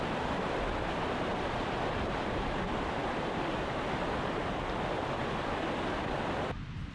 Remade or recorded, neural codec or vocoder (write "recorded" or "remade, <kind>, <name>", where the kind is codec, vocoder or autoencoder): recorded